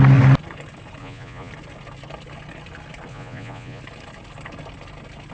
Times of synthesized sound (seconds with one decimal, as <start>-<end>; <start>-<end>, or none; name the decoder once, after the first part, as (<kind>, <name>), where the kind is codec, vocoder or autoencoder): 1.0-1.5 (vocoder, Vocos); 3.1-3.8